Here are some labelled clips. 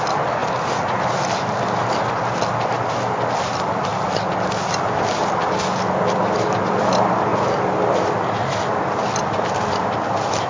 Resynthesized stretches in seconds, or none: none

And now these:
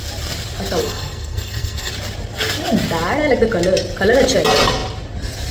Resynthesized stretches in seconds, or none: 0.8-1.9 (codec, SNAC)

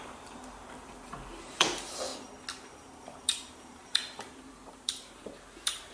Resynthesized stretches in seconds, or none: 0.0-2.1 (vocoder, BigVGAN v2); 2.7-5.9

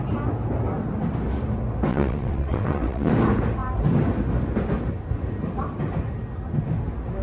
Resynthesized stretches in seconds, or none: 1.9-3.1 (vocoder, WaveNeXt)

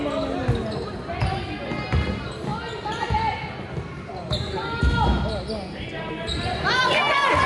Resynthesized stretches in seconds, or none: none

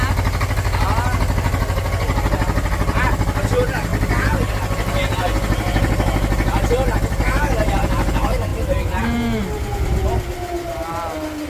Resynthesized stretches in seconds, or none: none

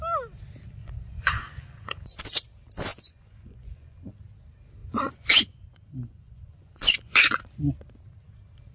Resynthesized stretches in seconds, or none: 0.8-2.2 (vocoder, Vocos); 2.9-4.1; 4.8-7.5